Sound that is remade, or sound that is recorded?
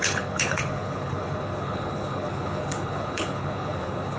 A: remade